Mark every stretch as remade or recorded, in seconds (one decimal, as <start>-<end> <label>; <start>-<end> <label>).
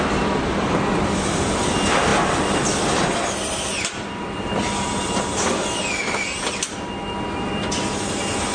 0.0-8.5 recorded